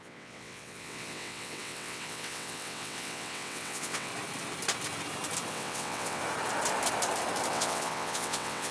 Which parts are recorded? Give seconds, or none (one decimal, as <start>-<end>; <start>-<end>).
4.1-5.5; 6.2-7.5